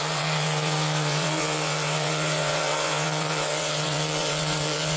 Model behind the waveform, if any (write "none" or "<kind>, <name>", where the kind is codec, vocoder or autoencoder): vocoder, WaveNeXt